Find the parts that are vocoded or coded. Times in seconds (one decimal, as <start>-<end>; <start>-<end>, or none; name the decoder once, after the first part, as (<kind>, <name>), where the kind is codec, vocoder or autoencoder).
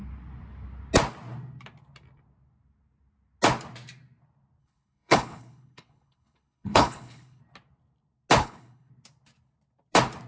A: 4.6-7.4 (codec, HILCodec); 8.4-8.9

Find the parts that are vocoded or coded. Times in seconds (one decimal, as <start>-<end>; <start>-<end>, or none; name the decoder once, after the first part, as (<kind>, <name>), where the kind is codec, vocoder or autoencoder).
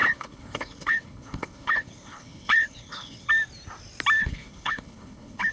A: 0.0-3.3 (codec, HILCodec); 4.2-5.5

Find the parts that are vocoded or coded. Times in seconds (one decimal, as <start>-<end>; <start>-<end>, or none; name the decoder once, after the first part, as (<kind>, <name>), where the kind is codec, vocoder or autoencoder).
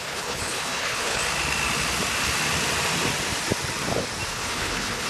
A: 0.0-1.2 (codec, HILCodec); 4.3-5.1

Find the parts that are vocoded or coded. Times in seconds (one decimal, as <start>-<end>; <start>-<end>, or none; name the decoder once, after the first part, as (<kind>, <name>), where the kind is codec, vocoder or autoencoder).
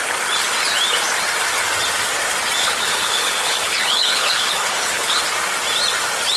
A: 2.6-5.2 (codec, HILCodec)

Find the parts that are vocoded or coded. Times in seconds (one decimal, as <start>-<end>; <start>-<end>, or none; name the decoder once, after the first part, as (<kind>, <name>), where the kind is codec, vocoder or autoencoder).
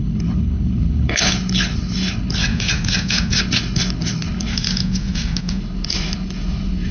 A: 0.0-2.4 (codec, HILCodec); 3.4-4.5; 5.6-6.9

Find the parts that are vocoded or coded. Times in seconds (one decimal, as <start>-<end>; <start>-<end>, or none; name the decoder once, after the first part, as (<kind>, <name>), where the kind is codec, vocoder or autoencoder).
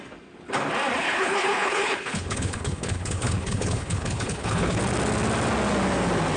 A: 1.0-4.8 (codec, HILCodec)